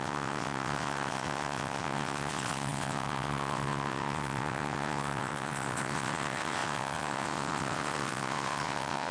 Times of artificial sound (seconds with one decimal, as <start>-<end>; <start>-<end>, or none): 0.0-9.1